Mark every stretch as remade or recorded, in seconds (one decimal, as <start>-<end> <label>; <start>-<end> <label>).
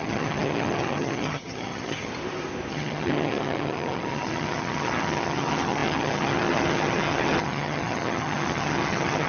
0.0-2.1 remade; 2.1-2.7 recorded; 2.7-9.3 remade